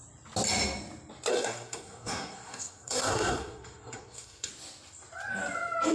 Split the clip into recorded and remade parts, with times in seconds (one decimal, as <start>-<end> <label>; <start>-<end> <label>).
0.0-1.3 recorded; 1.3-4.5 remade; 4.5-5.9 recorded